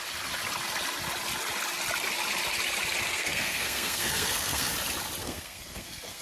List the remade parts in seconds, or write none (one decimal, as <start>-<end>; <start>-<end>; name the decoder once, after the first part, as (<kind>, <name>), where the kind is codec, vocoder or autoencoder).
3.1-4.7 (codec, SNAC); 5.2-6.2